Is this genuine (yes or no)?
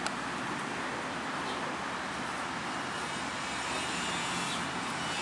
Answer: yes